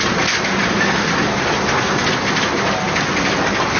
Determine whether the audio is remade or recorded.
recorded